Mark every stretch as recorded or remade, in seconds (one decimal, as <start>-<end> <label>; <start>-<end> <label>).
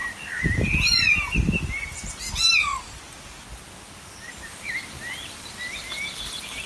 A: 0.0-6.7 recorded